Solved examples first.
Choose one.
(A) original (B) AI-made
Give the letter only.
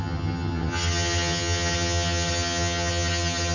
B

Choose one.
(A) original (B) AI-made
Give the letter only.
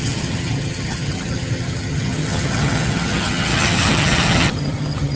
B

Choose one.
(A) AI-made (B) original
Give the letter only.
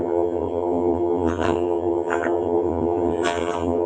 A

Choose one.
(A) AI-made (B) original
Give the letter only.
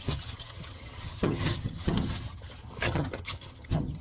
A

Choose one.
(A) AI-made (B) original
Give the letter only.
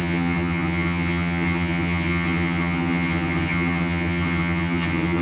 A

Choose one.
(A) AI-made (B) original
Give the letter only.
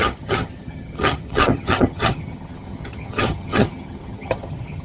A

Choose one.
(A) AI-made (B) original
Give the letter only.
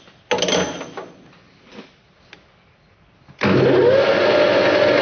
B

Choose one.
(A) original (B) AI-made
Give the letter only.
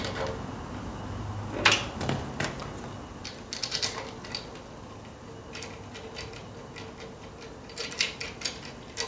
A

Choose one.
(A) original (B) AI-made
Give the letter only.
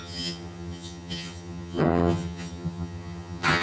B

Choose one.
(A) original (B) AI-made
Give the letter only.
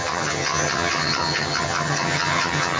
B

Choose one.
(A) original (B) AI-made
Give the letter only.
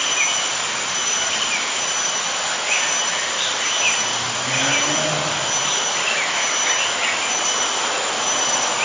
A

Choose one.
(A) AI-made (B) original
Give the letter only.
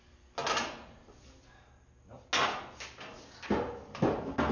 B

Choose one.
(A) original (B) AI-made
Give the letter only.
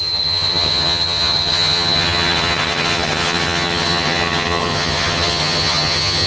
B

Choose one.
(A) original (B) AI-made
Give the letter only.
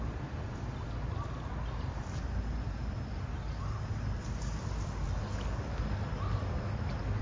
A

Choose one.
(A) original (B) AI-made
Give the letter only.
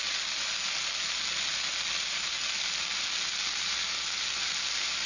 A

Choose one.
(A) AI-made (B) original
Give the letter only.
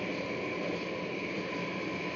B